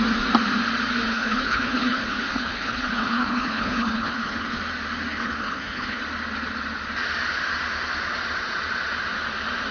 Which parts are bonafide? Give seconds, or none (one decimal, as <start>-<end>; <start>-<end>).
0.0-1.1; 4.6-5.1; 6.0-9.7